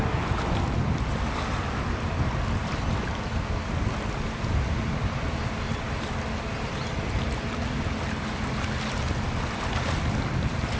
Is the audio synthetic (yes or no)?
no